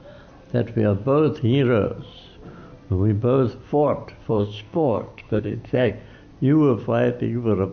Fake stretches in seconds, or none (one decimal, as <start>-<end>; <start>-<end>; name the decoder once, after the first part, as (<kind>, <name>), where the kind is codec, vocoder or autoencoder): 4.3-5.9 (codec, SNAC)